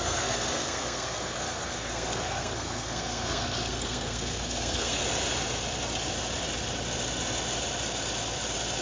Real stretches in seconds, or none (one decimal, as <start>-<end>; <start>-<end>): 5.0-8.8